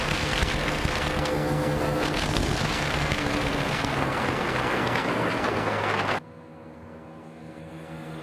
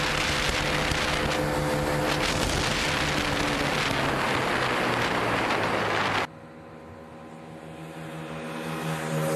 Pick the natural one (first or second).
second